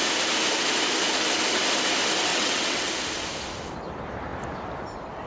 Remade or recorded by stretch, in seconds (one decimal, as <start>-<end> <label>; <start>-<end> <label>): 0.0-2.3 recorded; 2.3-2.9 remade; 2.9-5.3 recorded